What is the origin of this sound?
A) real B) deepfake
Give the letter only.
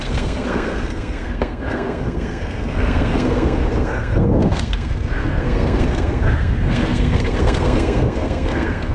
B